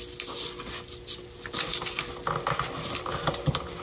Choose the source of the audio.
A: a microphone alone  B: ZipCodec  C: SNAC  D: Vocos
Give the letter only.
A